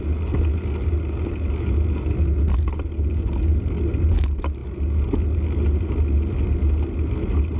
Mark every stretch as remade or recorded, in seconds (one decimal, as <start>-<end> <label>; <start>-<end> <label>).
0.0-7.6 recorded